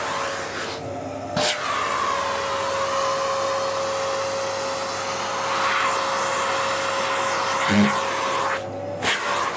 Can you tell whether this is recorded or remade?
recorded